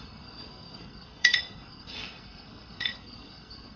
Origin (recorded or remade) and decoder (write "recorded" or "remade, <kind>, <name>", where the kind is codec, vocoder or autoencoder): remade, codec, SNAC